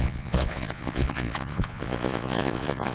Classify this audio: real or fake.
fake